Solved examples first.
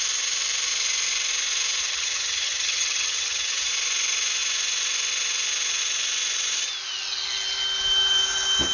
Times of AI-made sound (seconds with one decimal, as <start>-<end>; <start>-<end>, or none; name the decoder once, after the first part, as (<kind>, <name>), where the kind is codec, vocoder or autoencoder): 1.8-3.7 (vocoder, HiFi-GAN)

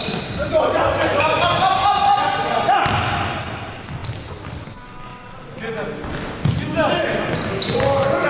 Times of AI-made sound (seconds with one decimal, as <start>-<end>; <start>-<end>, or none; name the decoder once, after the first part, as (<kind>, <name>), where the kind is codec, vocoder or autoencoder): none

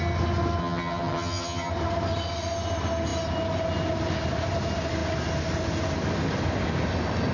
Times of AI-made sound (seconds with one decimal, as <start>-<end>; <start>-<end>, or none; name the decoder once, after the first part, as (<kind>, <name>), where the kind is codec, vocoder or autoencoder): 0.6-1.7 (vocoder, HiFi-GAN)

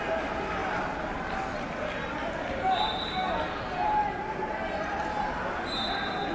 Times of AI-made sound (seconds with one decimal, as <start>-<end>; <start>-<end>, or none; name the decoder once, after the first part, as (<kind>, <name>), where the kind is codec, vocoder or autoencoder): none